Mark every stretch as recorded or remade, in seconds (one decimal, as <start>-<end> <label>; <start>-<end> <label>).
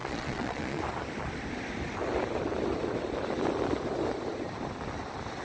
0.0-0.8 remade; 0.8-5.4 recorded